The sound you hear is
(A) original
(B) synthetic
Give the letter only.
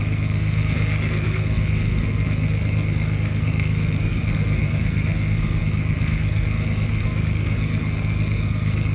B